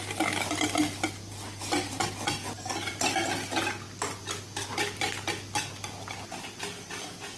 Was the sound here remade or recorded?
recorded